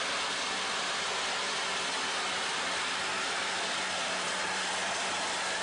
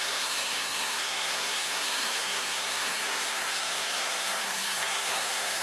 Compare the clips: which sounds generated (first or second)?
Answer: second